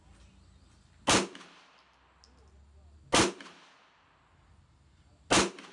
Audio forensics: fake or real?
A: real